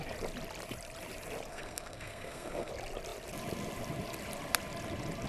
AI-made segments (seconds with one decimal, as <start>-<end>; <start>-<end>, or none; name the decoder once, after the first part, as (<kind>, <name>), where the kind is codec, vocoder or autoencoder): 1.5-2.7 (codec, SNAC)